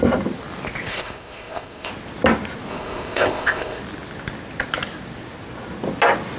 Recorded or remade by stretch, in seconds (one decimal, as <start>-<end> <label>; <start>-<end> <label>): 0.0-0.9 recorded; 0.9-1.9 remade; 1.9-2.7 recorded; 2.7-3.8 remade; 3.8-6.4 recorded